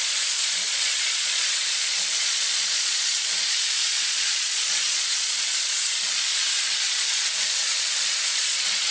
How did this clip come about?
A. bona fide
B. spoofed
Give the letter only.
B